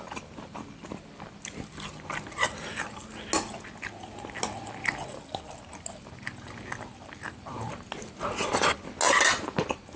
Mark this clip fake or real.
real